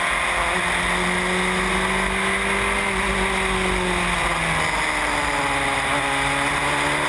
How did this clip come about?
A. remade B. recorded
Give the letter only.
B